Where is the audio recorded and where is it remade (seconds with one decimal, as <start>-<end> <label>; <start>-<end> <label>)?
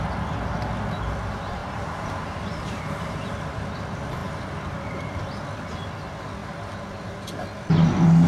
0.0-1.6 recorded; 1.6-3.3 remade; 3.3-6.4 recorded; 6.4-7.1 remade; 7.1-8.3 recorded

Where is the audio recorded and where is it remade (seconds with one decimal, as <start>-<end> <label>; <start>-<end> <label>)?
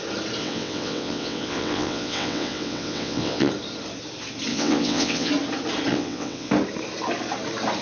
0.0-0.4 recorded; 0.4-3.5 remade; 3.5-4.5 recorded; 4.5-5.3 remade; 5.3-5.9 recorded; 5.9-6.5 remade; 6.5-7.8 recorded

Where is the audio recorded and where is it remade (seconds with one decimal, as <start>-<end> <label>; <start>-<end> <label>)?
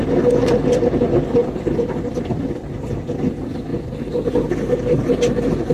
0.0-5.7 recorded